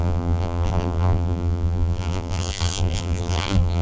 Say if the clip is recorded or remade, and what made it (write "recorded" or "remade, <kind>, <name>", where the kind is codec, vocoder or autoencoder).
remade, vocoder, BigVGAN v2